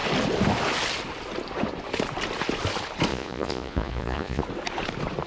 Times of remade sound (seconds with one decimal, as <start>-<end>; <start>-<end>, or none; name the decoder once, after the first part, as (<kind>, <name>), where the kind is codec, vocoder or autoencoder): 3.1-4.4 (vocoder, Vocos)